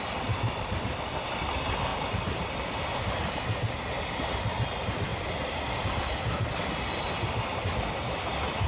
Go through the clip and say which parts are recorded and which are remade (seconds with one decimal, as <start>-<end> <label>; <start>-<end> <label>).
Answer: 0.0-1.9 recorded; 1.9-2.7 remade; 2.7-8.7 recorded